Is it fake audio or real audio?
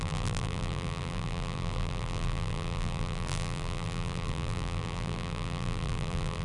fake